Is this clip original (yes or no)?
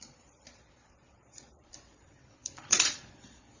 no